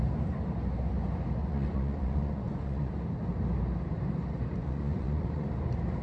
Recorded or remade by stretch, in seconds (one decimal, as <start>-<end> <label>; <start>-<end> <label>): 0.0-1.4 recorded; 1.4-3.0 remade; 3.0-4.6 recorded; 4.6-5.5 remade; 5.5-6.0 recorded